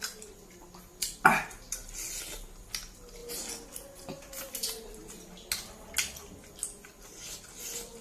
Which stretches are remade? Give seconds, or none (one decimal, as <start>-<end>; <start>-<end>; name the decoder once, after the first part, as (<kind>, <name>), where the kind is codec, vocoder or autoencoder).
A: none